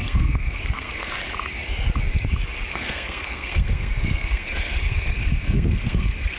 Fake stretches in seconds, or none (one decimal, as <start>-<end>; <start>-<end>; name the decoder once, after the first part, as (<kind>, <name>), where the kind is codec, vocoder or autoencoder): 0.0-1.1 (codec, SNAC); 2.7-6.4